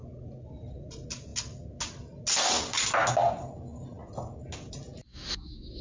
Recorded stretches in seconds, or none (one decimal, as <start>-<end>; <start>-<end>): 0.0-5.1